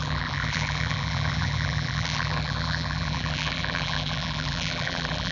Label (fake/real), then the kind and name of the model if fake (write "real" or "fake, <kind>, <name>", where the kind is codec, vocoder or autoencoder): fake, vocoder, BigVGAN v2